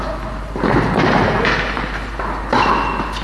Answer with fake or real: real